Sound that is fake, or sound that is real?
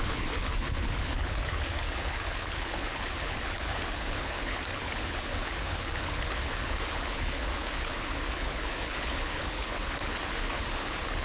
fake